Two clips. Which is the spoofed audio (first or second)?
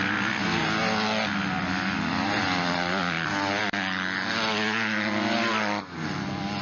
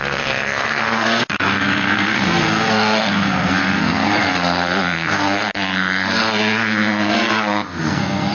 second